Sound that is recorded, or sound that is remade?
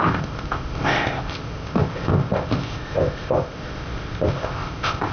remade